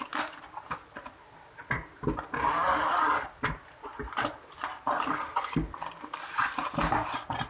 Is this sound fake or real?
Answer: real